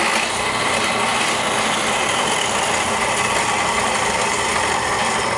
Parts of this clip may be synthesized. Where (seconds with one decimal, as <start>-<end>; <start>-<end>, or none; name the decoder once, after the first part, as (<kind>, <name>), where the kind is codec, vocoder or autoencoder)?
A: none